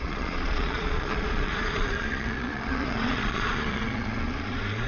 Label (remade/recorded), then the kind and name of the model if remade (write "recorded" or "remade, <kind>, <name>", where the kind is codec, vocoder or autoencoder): remade, vocoder, Vocos